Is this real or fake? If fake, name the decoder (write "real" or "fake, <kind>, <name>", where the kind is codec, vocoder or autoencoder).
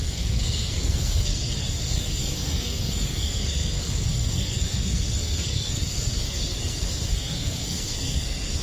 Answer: fake, codec, SNAC